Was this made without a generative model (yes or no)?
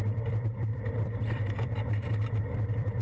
no